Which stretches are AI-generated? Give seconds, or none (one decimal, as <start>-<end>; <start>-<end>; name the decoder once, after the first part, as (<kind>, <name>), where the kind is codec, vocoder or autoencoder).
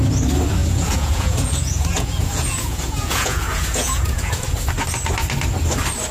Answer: 0.6-4.3 (vocoder, Vocos)